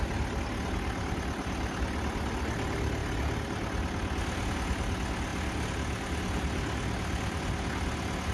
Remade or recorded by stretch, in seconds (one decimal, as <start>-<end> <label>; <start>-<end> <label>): 0.0-8.3 recorded